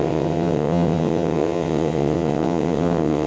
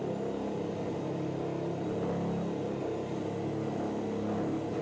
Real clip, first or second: second